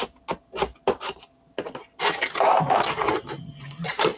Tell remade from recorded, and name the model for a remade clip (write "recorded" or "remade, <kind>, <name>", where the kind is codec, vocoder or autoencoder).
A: recorded